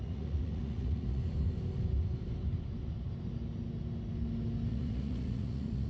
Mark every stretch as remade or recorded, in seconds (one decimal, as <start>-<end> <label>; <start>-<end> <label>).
0.0-1.2 remade; 1.2-4.7 recorded; 4.7-5.9 remade